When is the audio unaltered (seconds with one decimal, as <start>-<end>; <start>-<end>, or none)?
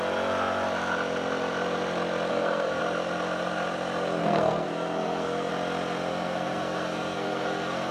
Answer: 0.0-2.3; 2.8-4.2; 5.5-6.1